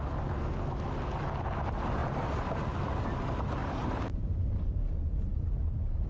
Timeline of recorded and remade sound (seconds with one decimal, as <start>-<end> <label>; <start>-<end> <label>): 0.0-2.0 recorded; 2.0-2.6 remade; 2.6-3.6 recorded; 3.6-6.1 remade